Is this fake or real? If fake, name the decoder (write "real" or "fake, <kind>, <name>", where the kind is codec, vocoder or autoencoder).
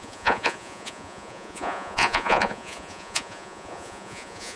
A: fake, vocoder, Vocos